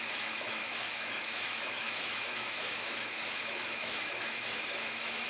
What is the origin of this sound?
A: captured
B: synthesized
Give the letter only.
B